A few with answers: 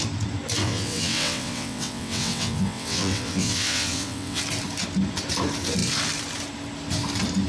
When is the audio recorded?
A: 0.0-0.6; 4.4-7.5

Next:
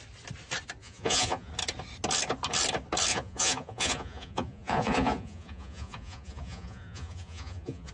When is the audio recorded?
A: 0.0-0.8; 1.5-3.1

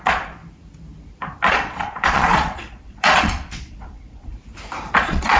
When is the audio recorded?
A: 0.4-1.5; 4.3-5.0

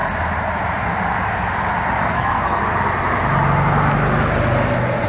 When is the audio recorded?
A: 0.0-2.0; 2.6-5.1

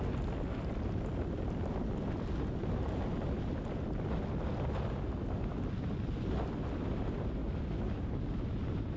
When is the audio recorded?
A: 0.0-9.0